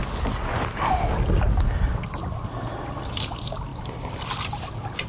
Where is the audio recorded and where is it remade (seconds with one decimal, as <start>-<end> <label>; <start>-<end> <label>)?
0.0-3.7 recorded; 3.7-5.1 remade